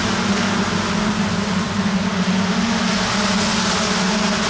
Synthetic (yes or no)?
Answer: no